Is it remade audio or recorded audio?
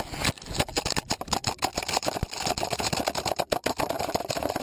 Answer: recorded